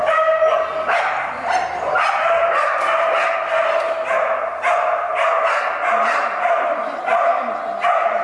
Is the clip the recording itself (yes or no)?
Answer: yes